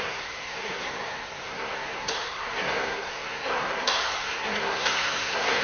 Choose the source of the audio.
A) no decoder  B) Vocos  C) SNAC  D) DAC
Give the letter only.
C